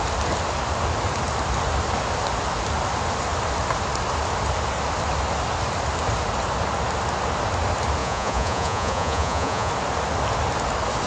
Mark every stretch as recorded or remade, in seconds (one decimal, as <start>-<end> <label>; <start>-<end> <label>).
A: 0.0-8.0 recorded; 8.0-9.7 remade; 9.7-11.1 recorded